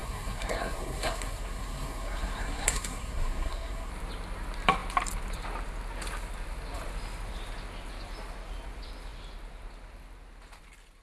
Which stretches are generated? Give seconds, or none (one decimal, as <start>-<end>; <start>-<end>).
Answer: 0.0-3.9